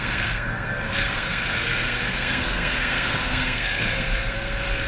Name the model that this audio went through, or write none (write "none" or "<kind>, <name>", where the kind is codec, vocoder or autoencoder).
codec, SNAC